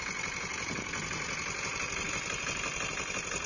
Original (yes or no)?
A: yes